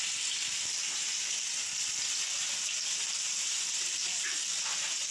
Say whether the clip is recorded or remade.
recorded